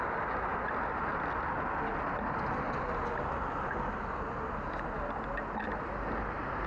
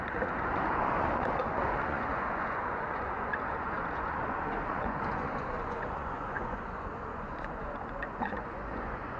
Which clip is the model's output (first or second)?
second